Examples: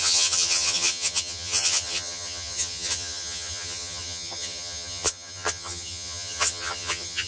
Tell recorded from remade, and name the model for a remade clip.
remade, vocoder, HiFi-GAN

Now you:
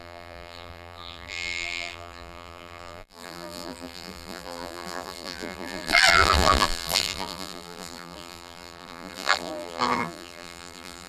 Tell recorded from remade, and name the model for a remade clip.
remade, vocoder, BigVGAN v2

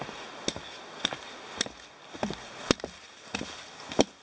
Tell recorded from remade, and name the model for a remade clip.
recorded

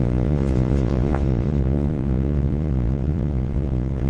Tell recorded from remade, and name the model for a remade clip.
remade, vocoder, Vocos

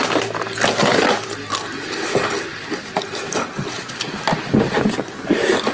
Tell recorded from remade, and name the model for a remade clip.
recorded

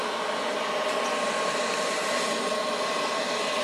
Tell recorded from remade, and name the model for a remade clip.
recorded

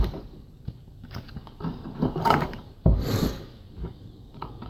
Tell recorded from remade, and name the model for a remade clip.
remade, codec, DAC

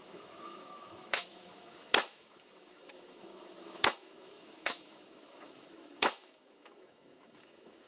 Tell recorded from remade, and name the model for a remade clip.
remade, autoencoder, DAC-VAE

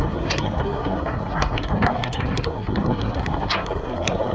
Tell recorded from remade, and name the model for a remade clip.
remade, codec, SNAC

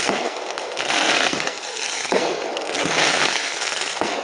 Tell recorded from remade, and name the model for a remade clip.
remade, codec, SNAC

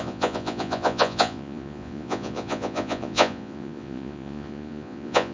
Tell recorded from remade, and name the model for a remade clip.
remade, vocoder, Vocos